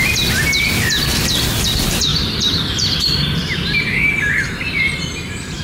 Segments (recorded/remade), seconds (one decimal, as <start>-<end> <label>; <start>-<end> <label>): 0.0-2.1 recorded; 2.1-3.0 remade; 3.0-3.4 recorded; 3.4-5.6 remade